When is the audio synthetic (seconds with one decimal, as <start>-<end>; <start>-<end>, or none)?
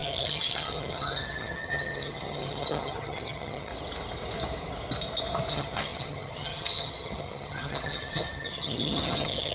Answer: 0.0-3.7; 5.5-9.5